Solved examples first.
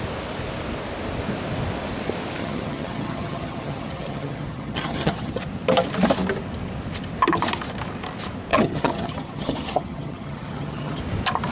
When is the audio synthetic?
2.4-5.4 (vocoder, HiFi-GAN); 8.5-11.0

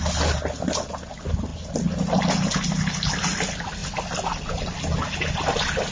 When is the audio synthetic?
none

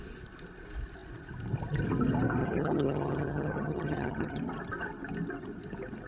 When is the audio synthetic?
2.4-4.4 (vocoder, HiFi-GAN)

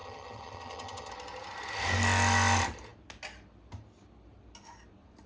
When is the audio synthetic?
0.0-1.1 (vocoder, HiFi-GAN)

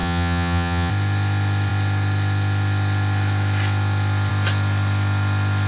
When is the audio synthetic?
0.0-0.9 (vocoder, HiFi-GAN)

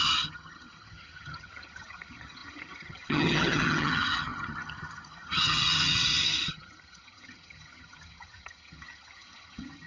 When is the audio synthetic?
0.0-9.9 (vocoder, HiFi-GAN)

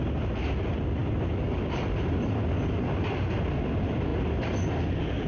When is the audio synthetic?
none